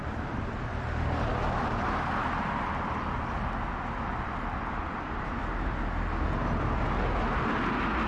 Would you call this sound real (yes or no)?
yes